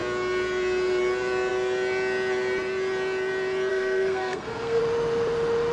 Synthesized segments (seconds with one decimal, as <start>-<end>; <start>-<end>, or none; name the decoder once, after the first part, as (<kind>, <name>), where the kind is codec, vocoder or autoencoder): 3.7-4.8 (codec, SNAC)